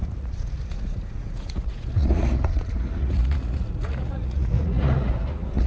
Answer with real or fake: fake